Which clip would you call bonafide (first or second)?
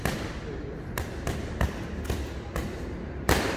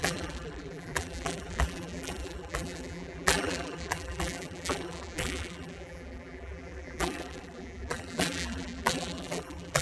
first